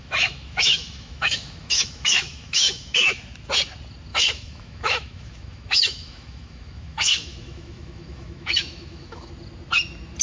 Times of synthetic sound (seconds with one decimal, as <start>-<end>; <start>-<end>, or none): 0.0-3.2; 4.1-9.3